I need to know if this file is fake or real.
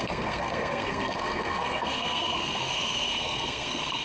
fake